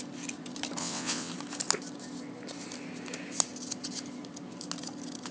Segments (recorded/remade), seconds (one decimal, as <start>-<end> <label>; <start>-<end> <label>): 0.0-0.8 recorded; 0.8-1.3 remade; 1.3-5.3 recorded